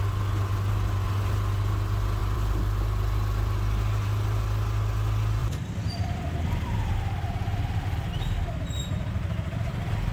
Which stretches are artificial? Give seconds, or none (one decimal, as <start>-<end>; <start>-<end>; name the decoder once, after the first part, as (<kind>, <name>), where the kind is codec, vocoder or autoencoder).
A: 2.2-2.8 (vocoder, BigVGAN v2); 5.4-6.2